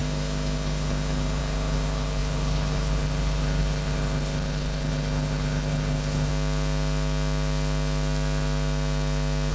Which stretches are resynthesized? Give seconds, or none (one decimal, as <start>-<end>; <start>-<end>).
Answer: 0.0-6.3